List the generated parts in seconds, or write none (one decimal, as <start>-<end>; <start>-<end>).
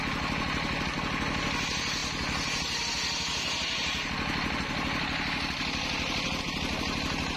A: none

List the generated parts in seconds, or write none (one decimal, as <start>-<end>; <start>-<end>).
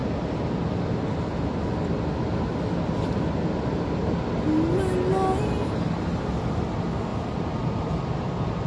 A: 7.1-8.7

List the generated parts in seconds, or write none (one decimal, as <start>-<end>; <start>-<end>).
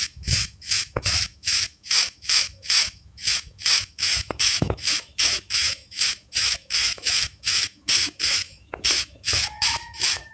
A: 0.0-10.3